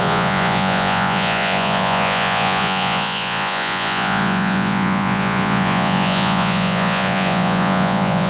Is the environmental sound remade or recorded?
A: remade